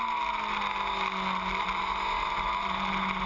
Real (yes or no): yes